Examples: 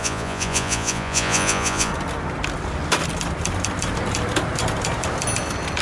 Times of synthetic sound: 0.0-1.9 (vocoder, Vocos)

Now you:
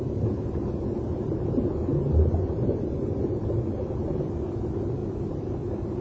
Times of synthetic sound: 1.9-2.9 (vocoder, BigVGAN v2); 5.0-5.5

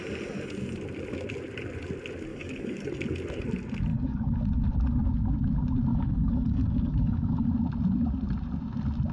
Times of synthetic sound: 2.3-3.0 (codec, DAC); 3.9-4.4; 5.9-7.5